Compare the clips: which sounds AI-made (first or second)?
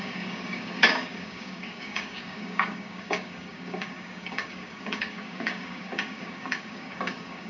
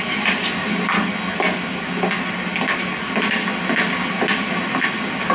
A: first